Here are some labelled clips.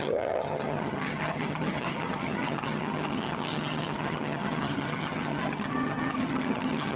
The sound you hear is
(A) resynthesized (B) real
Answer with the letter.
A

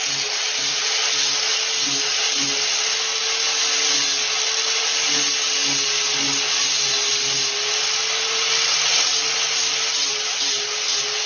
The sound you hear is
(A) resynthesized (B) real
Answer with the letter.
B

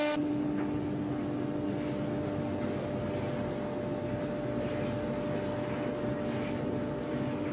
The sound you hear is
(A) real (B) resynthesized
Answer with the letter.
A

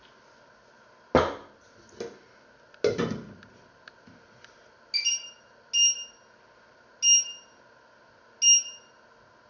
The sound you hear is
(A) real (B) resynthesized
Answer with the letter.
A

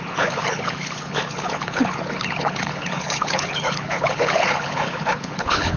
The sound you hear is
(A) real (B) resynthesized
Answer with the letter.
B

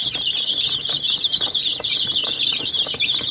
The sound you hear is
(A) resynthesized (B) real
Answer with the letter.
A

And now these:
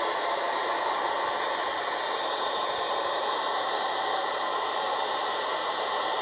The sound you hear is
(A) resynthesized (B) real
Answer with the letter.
A